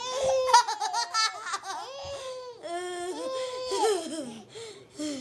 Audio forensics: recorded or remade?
recorded